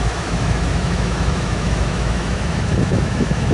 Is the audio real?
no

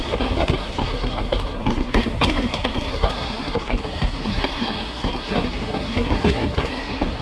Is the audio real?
no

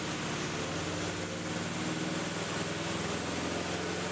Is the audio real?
yes